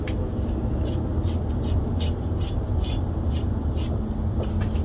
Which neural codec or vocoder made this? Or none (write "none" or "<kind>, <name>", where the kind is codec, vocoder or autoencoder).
none